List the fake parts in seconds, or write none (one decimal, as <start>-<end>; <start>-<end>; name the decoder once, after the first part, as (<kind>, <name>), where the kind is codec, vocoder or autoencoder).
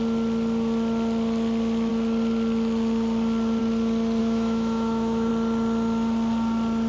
4.2-5.3 (autoencoder, DAC-VAE)